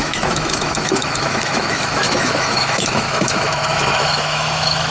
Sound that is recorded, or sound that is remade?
remade